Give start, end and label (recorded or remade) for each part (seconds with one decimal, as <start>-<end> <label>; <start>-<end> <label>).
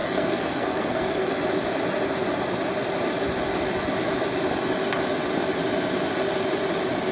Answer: 0.0-1.4 remade; 1.4-7.1 recorded